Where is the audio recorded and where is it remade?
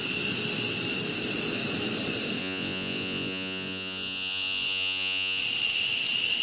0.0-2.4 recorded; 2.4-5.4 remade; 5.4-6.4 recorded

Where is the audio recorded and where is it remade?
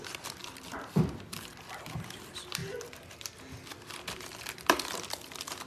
0.0-2.6 remade; 2.6-4.0 recorded; 4.0-5.7 remade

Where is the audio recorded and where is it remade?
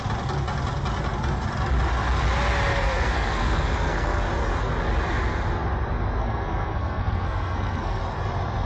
0.0-2.7 recorded; 2.7-4.2 remade; 4.2-6.2 recorded; 6.2-8.0 remade; 8.0-8.7 recorded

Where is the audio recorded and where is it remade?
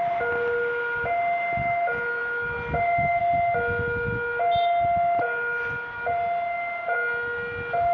0.0-7.9 recorded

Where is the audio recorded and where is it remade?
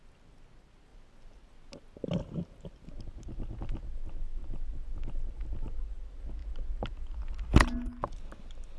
0.0-8.8 recorded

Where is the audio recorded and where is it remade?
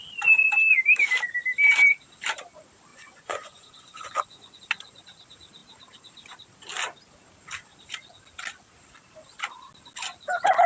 0.0-2.9 recorded; 2.9-4.6 remade; 4.6-10.7 recorded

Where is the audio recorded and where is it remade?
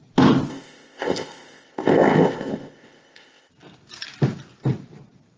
0.0-0.5 recorded; 0.5-3.5 remade; 3.5-5.4 recorded